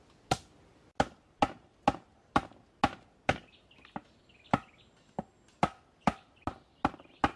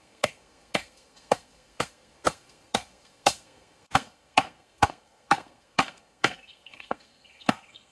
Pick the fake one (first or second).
second